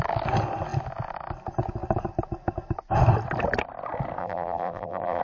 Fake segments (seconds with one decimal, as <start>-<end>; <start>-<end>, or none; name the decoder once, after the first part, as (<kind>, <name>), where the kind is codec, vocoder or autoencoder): 4.2-5.2 (vocoder, BigVGAN v2)

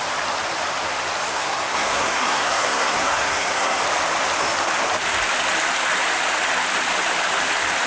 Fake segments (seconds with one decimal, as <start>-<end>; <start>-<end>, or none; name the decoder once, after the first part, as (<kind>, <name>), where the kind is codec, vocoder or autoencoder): 1.3-3.8 (codec, SNAC)

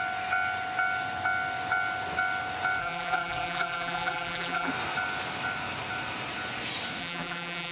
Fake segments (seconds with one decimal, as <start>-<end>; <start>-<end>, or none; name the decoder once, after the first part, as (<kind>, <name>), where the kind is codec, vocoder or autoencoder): 2.8-4.7 (vocoder, BigVGAN v2); 7.0-7.7

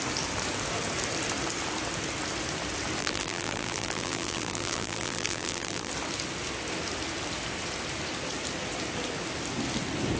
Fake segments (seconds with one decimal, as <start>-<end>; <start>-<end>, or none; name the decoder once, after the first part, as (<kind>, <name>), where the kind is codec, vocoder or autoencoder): 3.0-5.9 (vocoder, BigVGAN v2)

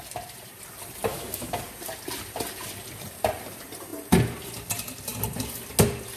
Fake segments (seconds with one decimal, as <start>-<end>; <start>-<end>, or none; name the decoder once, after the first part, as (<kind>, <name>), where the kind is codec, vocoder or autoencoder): 1.1-1.6 (autoencoder, DAC-VAE)

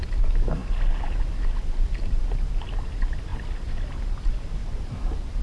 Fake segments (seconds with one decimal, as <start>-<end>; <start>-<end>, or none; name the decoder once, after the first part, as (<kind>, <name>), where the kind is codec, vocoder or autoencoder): 4.6-5.4 (vocoder, BigVGAN v2)

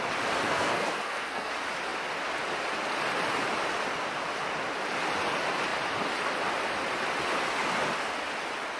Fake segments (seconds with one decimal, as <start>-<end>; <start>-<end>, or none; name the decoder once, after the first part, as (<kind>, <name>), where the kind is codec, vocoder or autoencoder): 0.4-1.5 (codec, SNAC)

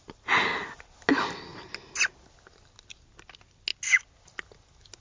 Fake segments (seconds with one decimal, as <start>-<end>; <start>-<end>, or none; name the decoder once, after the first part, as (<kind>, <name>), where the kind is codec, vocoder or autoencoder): none